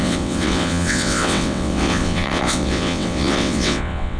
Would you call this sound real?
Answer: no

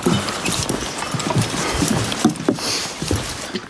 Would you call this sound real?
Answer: yes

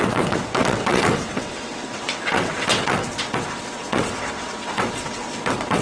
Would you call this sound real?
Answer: no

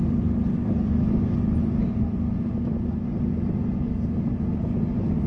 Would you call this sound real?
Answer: yes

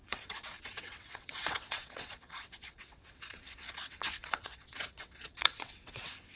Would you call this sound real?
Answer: no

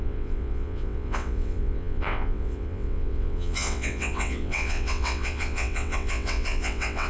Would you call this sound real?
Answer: no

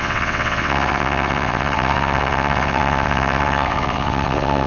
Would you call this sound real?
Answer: no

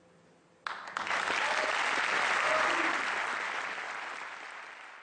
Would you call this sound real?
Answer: yes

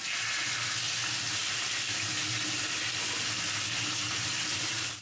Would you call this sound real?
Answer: yes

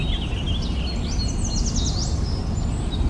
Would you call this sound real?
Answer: yes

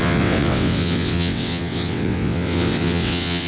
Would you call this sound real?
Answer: no